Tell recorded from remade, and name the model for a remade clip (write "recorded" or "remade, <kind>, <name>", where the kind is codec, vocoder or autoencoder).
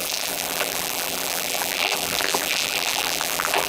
remade, vocoder, BigVGAN v2